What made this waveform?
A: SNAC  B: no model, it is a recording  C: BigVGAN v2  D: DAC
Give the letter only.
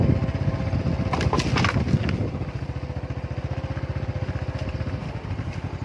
B